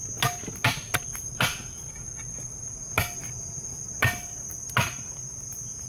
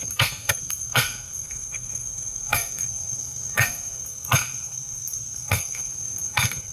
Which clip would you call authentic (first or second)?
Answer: first